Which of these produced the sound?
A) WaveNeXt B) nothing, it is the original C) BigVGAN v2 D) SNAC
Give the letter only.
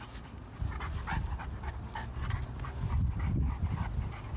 B